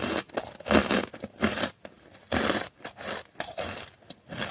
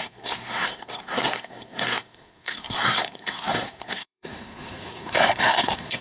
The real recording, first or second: first